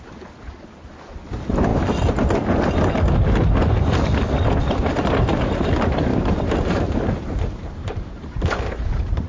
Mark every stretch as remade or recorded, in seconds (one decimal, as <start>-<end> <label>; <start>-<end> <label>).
0.0-6.1 recorded; 6.1-9.3 remade

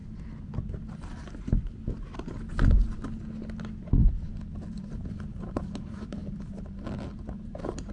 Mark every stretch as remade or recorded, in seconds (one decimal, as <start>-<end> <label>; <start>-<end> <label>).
0.0-4.7 recorded; 4.7-6.2 remade; 6.2-7.4 recorded; 7.4-7.9 remade

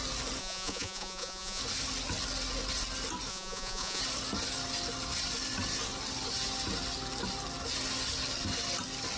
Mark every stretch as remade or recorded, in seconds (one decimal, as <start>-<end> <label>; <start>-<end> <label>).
0.0-0.4 recorded; 0.4-1.6 remade; 1.6-3.3 recorded; 3.3-4.0 remade; 4.0-9.2 recorded